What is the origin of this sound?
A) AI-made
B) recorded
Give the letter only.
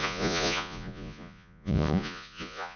A